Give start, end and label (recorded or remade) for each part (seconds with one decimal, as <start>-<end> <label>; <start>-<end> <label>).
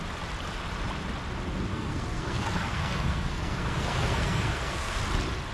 0.0-1.7 recorded; 1.7-5.0 remade; 5.0-5.5 recorded